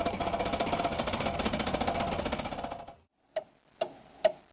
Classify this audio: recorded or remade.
recorded